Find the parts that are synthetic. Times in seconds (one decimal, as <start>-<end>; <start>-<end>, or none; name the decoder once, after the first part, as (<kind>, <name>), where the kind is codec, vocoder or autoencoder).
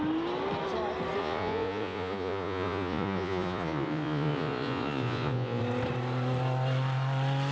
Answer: 1.2-5.6 (vocoder, Vocos)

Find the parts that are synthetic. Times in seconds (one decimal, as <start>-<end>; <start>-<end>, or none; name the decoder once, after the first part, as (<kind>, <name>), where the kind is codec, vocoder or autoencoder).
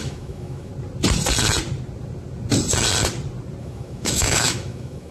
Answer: 0.0-0.7 (autoencoder, DAC-VAE); 3.6-5.1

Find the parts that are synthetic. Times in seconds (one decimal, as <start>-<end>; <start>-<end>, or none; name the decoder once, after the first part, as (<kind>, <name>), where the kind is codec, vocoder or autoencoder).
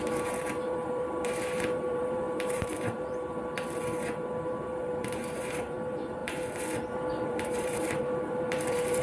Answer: 0.0-9.0 (vocoder, BigVGAN v2)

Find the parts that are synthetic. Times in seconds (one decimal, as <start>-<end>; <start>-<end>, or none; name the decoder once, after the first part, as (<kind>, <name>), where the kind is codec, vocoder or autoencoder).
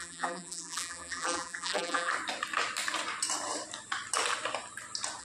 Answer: 0.0-2.1 (vocoder, BigVGAN v2)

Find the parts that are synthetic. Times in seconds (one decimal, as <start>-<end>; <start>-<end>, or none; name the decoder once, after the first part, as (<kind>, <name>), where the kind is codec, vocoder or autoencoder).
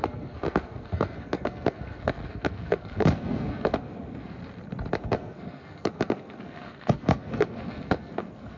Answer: 0.0-4.4 (codec, SNAC); 5.0-8.6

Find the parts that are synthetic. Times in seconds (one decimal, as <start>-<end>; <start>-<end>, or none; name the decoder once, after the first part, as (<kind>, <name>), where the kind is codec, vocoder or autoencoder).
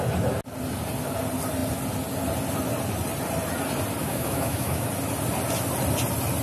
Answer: 4.0-4.9 (autoencoder, DAC-VAE)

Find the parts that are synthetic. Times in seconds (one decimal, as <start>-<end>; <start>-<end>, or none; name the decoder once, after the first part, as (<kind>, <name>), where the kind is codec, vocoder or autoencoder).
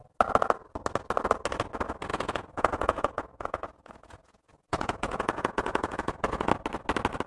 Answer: 2.1-6.5 (vocoder, Vocos)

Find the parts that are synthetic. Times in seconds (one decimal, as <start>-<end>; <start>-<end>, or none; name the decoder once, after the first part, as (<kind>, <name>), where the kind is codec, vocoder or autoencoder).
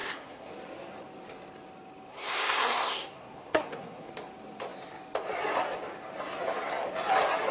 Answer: 0.0-0.5 (codec, SNAC); 2.1-4.1